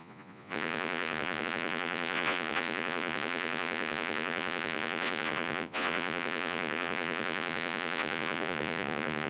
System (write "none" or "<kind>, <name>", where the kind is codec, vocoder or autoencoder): vocoder, Vocos